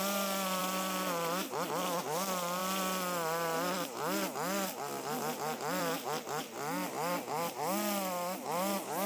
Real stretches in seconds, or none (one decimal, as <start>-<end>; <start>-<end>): 0.0-0.6; 2.0-9.1